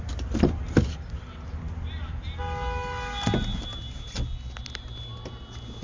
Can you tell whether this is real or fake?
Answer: real